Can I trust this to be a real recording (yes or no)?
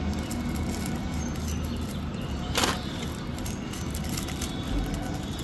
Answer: yes